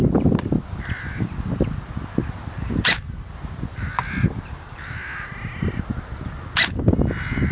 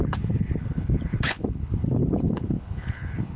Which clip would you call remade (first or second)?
second